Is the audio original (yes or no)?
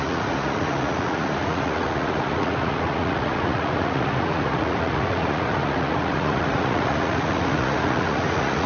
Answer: no